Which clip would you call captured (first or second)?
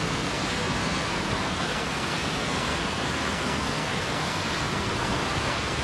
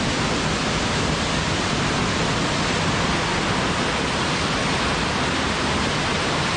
second